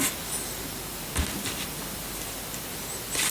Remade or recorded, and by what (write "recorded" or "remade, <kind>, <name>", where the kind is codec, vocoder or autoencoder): recorded